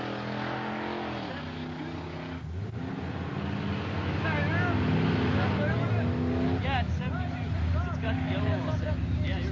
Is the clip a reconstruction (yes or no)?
no